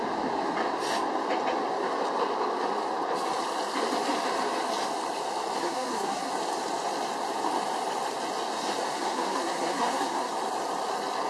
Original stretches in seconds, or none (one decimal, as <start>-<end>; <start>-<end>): 0.0-5.6; 6.3-8.9; 10.3-11.3